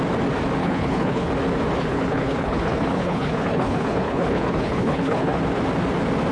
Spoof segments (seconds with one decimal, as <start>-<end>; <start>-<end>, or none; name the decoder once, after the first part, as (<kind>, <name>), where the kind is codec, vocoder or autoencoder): 0.6-1.3 (codec, HILCodec); 1.8-5.4